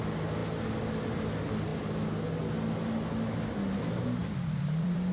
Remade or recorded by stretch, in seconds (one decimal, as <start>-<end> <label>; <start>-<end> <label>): 0.0-4.2 recorded; 4.2-5.1 remade

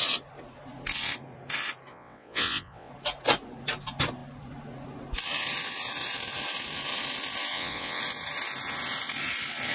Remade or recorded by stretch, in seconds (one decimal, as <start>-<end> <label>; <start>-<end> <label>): 0.0-1.9 recorded; 1.9-2.9 remade; 2.9-7.5 recorded; 7.5-8.0 remade; 8.0-9.7 recorded